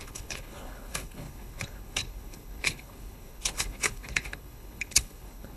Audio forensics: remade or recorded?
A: remade